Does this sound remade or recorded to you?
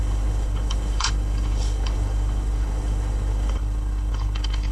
remade